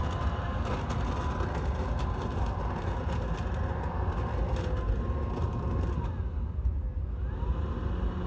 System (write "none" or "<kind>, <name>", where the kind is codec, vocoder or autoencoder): none